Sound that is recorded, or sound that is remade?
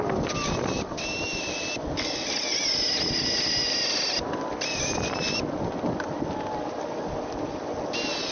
recorded